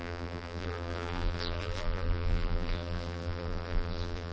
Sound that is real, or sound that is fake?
fake